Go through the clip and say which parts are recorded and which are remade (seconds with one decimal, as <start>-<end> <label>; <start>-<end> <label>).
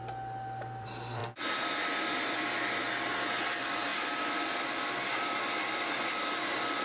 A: 0.0-6.8 recorded